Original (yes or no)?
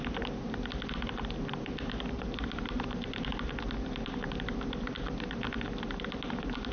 yes